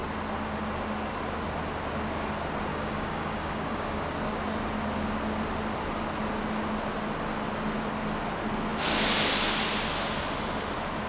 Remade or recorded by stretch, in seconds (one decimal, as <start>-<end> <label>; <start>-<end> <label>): 0.0-2.7 recorded; 2.7-4.0 remade; 4.0-11.1 recorded